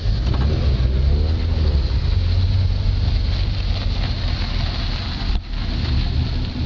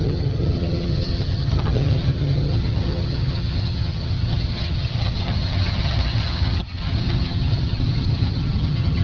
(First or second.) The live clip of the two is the first